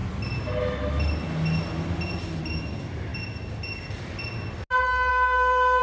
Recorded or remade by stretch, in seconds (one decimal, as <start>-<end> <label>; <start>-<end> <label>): 0.0-5.1 recorded; 5.1-5.8 remade